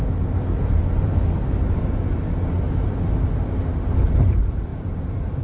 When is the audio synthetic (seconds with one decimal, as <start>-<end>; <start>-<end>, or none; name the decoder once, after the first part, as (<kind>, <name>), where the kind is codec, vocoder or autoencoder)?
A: 0.0-0.8 (vocoder, BigVGAN v2); 4.0-4.7